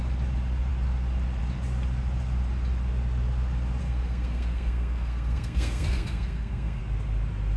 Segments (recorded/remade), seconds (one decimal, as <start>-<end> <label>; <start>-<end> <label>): 0.0-3.8 recorded; 3.8-6.8 remade; 6.8-7.6 recorded

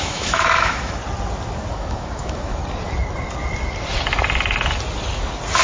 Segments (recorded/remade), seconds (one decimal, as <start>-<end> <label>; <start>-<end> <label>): 0.0-1.0 remade; 1.0-1.7 recorded; 1.7-2.6 remade; 2.6-5.6 recorded

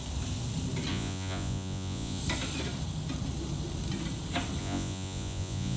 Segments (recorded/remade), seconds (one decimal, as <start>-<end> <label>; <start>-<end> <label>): 0.0-0.9 recorded; 0.9-2.2 remade; 2.2-4.6 recorded; 4.6-5.8 remade

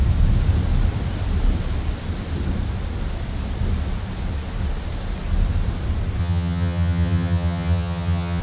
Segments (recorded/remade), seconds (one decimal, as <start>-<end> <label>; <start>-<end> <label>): 0.0-6.2 recorded; 6.2-8.4 remade

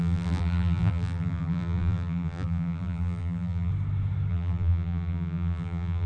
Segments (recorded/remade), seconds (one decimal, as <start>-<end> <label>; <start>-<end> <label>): 0.0-3.7 remade; 3.7-4.3 recorded; 4.3-6.1 remade